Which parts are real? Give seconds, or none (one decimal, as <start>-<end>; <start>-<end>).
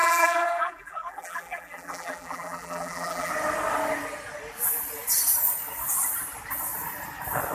3.3-7.5